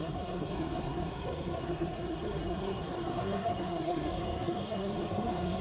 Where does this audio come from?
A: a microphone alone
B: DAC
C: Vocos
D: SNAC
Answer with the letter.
D